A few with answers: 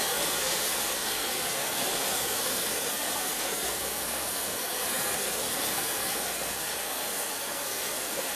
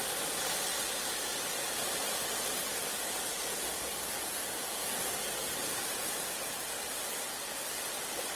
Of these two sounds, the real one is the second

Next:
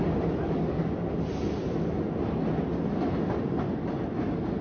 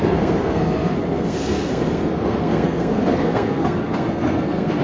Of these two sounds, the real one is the first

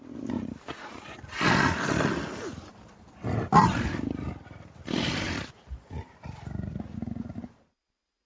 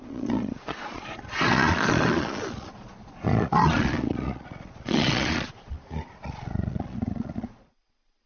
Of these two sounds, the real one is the first